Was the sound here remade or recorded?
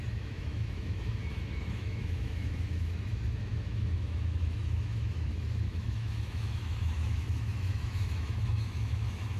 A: remade